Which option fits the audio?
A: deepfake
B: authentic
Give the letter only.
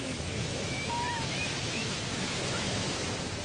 A